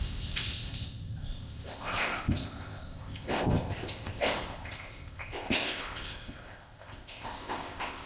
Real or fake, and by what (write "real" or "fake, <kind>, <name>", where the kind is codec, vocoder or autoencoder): fake, codec, ZipCodec